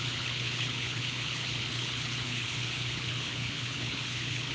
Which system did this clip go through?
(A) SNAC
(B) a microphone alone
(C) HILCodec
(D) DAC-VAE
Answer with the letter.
C